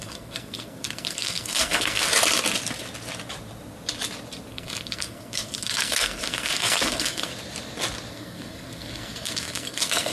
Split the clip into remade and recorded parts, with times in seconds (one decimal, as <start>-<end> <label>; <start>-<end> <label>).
0.0-2.1 remade; 2.1-4.5 recorded; 4.5-7.3 remade; 7.3-8.1 recorded; 8.1-10.1 remade